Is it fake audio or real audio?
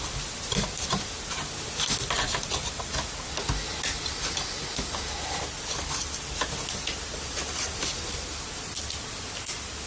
real